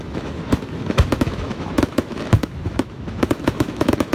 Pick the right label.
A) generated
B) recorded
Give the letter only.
A